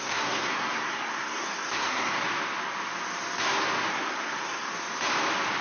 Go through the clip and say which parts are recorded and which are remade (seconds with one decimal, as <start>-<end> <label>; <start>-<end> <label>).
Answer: 0.0-2.1 remade; 2.1-3.9 recorded; 3.9-4.7 remade; 4.7-5.6 recorded